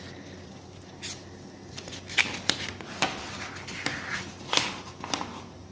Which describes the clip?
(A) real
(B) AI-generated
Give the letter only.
A